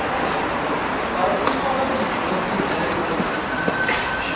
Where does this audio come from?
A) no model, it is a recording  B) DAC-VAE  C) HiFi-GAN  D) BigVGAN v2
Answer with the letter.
D